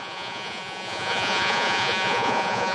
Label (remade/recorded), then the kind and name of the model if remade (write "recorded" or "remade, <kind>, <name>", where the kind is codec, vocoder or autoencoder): remade, vocoder, Vocos